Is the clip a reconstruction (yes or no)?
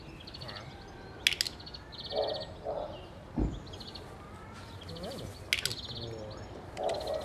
no